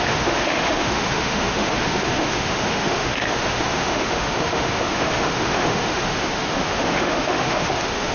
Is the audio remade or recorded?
remade